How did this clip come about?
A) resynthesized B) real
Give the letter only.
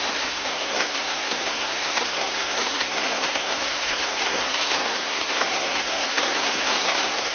A